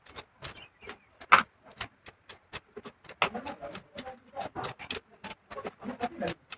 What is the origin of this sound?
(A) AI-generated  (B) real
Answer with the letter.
B